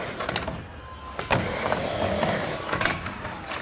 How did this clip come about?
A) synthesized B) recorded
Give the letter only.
B